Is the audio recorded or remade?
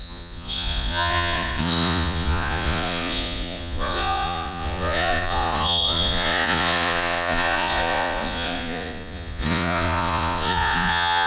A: remade